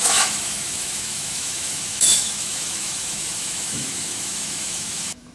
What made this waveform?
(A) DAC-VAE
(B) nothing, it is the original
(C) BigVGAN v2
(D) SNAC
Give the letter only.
A